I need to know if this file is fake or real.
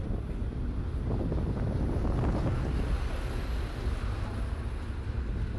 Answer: real